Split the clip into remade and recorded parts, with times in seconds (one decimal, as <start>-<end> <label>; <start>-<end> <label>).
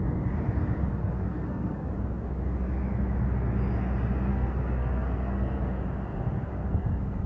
0.0-1.0 recorded; 1.0-1.9 remade; 1.9-4.3 recorded; 4.3-5.8 remade; 5.8-6.5 recorded; 6.5-7.3 remade